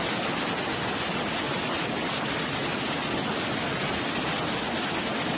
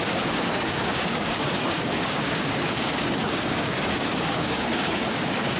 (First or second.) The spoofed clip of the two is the second